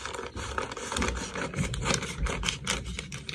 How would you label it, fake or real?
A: real